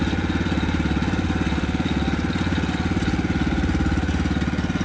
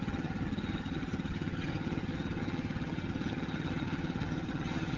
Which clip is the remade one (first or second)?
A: second